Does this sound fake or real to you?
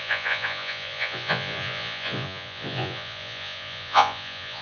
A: fake